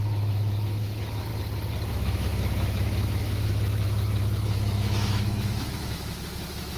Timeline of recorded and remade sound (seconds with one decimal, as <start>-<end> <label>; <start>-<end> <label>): 0.0-1.3 remade; 1.3-1.9 recorded; 1.9-6.8 remade